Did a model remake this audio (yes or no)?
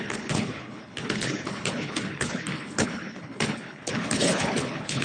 yes